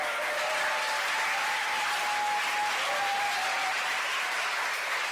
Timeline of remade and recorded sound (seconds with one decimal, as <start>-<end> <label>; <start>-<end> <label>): 0.0-3.6 recorded; 3.6-4.4 remade; 4.4-5.1 recorded